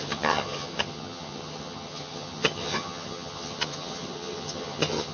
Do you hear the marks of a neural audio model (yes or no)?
yes